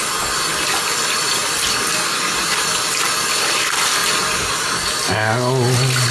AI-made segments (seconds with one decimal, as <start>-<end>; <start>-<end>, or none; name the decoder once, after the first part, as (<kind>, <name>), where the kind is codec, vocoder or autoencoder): none